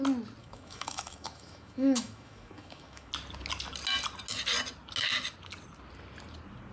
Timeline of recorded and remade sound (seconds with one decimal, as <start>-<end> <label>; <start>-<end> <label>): 0.0-0.4 recorded; 0.4-3.1 remade; 3.1-6.7 recorded